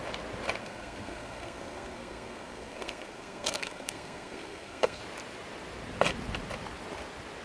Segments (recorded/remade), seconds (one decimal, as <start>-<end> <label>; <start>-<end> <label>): 0.0-0.6 recorded; 0.6-5.0 remade; 5.0-7.4 recorded